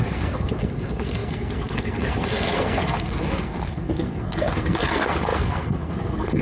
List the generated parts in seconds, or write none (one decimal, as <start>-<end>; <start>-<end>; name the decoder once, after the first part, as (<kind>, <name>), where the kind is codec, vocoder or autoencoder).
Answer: 0.0-6.4 (codec, SNAC)